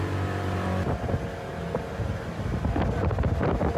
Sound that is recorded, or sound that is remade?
recorded